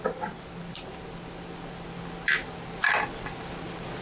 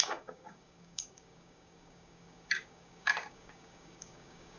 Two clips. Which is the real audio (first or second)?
first